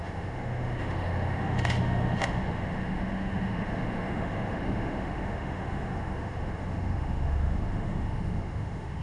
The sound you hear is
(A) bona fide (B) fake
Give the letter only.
B